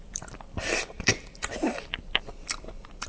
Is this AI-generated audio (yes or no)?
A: yes